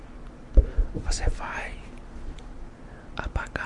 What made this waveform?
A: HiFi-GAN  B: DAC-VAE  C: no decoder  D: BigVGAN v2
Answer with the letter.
D